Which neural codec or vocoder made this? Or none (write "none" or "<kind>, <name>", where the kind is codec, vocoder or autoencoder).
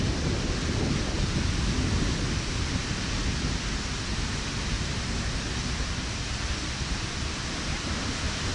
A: none